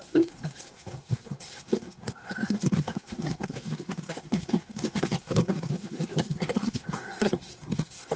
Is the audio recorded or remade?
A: remade